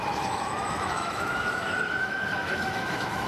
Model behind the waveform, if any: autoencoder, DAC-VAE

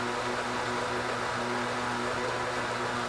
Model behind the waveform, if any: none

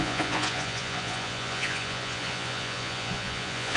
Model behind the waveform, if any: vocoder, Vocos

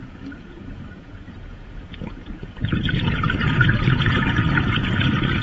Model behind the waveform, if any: vocoder, Vocos